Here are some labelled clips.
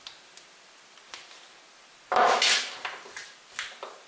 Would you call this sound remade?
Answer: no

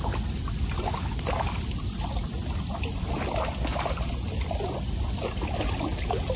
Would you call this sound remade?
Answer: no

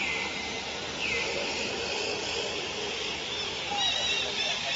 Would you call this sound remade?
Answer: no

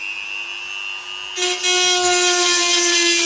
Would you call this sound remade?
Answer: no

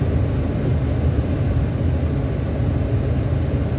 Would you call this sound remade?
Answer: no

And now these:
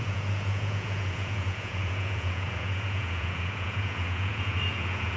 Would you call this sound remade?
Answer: yes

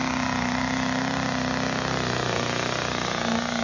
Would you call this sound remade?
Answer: no